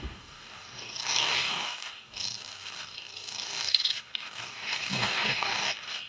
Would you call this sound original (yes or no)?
no